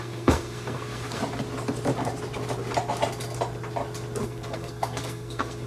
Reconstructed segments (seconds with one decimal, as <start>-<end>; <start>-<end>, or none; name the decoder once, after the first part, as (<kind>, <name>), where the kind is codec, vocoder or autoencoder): 0.0-1.2 (codec, SNAC); 4.2-5.7

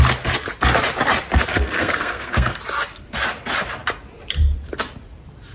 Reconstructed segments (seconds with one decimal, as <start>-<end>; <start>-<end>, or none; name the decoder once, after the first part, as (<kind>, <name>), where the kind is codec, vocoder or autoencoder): 1.5-2.6 (codec, SNAC)

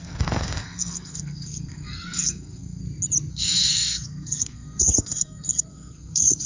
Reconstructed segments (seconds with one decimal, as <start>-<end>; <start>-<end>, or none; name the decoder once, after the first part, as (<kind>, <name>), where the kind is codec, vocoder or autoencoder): 0.0-2.8 (codec, SNAC); 3.3-6.5

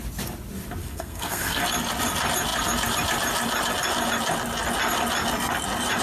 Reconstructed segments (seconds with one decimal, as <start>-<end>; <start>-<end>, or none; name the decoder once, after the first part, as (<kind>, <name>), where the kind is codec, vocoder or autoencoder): 0.8-1.6 (codec, SNAC)

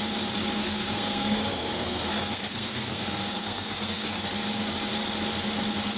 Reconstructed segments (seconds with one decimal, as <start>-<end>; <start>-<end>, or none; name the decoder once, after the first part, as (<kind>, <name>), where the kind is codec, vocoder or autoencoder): 0.6-4.2 (codec, SNAC)

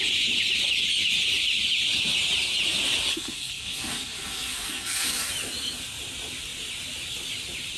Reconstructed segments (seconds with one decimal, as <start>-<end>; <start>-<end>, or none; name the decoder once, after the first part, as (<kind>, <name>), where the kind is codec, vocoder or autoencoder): 3.1-5.3 (codec, SNAC)

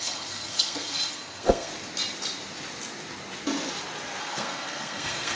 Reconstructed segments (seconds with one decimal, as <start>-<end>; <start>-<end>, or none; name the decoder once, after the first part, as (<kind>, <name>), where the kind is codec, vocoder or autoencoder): 0.0-1.7 (codec, SNAC); 4.2-5.4

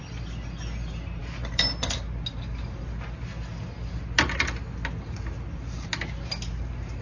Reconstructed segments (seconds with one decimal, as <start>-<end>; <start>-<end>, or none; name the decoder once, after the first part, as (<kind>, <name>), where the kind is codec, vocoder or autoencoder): none